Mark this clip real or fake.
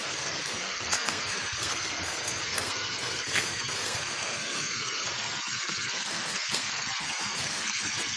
fake